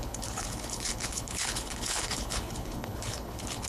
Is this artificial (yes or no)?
yes